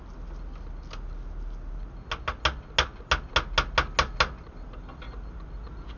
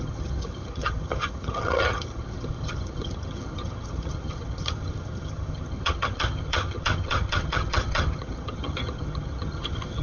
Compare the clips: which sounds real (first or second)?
first